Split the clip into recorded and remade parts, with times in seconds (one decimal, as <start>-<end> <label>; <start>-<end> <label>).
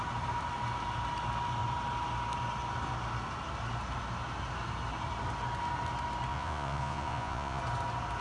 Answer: 0.0-6.3 recorded; 6.3-7.6 remade; 7.6-8.2 recorded